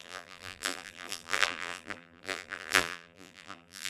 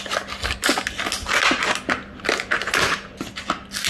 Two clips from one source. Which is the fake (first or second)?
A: first